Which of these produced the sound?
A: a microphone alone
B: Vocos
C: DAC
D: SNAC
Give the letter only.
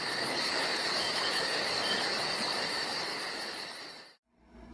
C